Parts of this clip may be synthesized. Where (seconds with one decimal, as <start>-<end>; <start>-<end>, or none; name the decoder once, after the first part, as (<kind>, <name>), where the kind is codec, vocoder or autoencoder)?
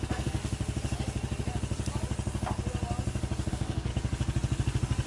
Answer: 0.0-0.4 (codec, SNAC); 3.5-3.9